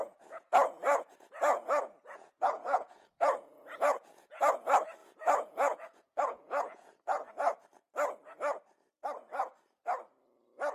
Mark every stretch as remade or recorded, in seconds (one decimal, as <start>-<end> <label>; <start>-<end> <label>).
0.0-4.5 remade; 4.5-5.0 recorded; 5.0-7.3 remade; 7.3-10.7 recorded